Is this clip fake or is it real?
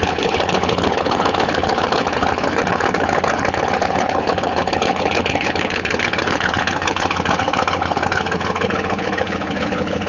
fake